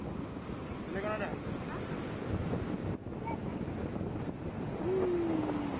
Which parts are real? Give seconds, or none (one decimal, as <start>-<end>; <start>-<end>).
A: 0.0-5.8